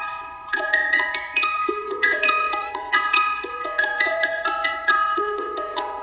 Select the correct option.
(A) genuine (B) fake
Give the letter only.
B